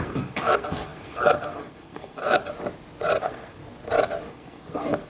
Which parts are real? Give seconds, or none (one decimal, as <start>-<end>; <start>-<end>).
2.4-3.2; 3.6-4.3